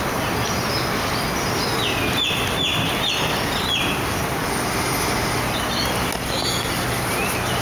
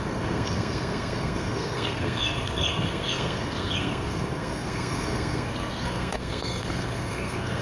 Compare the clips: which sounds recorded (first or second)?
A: first